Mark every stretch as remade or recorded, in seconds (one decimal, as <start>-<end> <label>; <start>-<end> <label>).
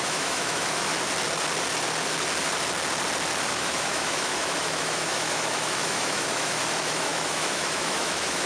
0.0-0.9 remade; 0.9-3.5 recorded; 3.5-8.5 remade